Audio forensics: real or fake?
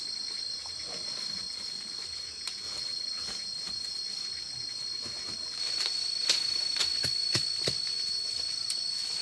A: real